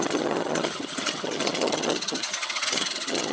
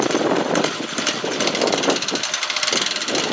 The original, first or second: second